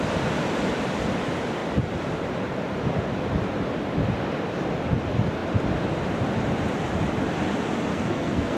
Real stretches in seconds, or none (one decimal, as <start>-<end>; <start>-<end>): 0.0-7.9